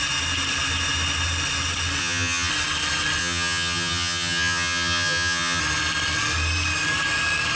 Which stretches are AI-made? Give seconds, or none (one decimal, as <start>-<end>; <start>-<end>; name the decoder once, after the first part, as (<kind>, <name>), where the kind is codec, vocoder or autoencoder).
2.0-2.5 (vocoder, HiFi-GAN); 3.2-5.6